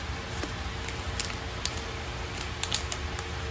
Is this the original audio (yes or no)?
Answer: yes